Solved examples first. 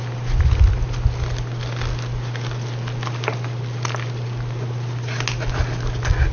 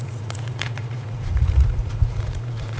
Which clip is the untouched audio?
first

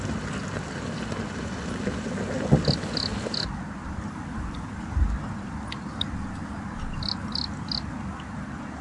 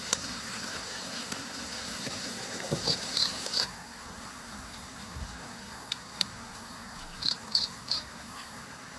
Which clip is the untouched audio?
first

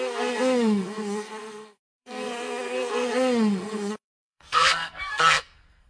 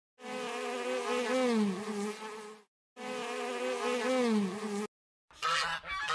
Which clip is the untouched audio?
second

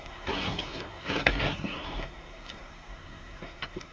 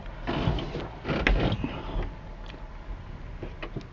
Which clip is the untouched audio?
second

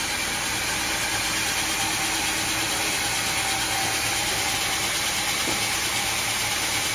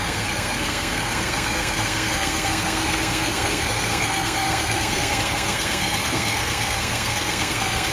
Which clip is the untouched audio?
first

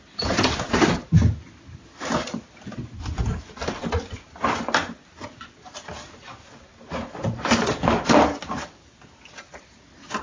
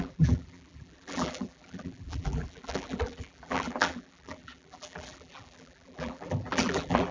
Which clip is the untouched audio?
first